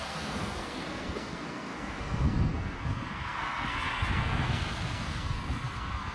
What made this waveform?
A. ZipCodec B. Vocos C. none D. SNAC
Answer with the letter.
D